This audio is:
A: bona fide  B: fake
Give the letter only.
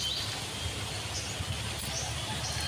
A